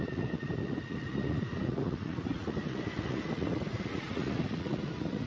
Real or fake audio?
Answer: fake